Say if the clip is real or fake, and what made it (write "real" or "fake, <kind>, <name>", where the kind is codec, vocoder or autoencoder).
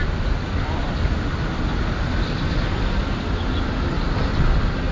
real